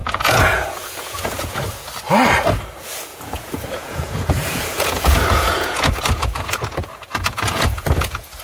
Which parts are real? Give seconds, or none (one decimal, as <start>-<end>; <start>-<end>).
1.6-3.1